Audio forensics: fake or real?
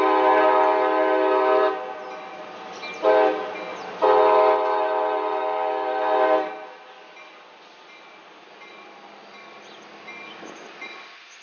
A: real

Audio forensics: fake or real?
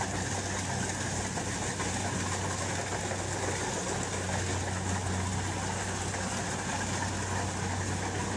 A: real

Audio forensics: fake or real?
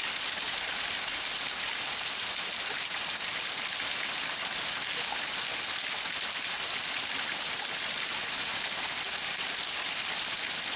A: real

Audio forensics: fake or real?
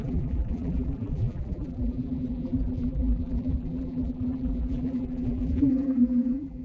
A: fake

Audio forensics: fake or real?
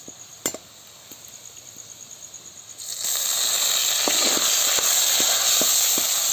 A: real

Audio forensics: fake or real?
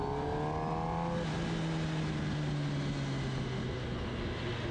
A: real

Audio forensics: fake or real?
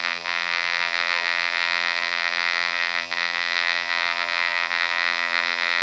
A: fake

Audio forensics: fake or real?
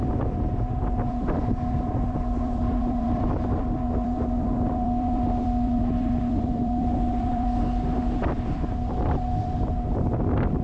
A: fake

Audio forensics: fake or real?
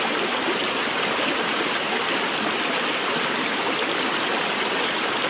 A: real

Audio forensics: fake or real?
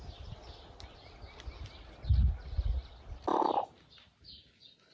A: real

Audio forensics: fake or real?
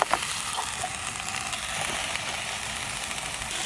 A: real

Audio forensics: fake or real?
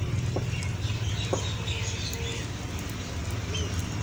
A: real